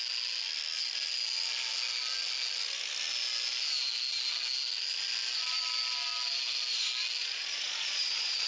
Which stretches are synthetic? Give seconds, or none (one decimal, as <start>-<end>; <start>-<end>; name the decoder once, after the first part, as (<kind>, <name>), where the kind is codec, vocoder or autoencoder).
7.2-8.5 (vocoder, Vocos)